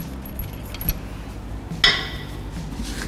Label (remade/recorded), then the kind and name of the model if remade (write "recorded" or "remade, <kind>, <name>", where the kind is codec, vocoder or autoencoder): recorded